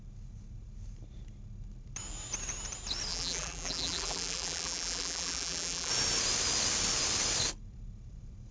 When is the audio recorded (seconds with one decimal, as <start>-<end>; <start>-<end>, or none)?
0.0-3.1; 5.9-8.5